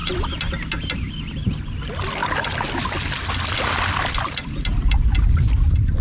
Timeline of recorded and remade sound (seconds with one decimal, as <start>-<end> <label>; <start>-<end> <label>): 0.0-6.0 recorded